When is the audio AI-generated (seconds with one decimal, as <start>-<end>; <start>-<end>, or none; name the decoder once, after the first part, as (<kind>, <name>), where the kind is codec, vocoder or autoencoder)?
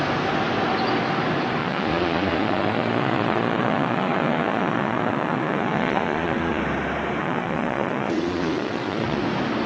1.6-6.6 (vocoder, Vocos); 7.2-9.2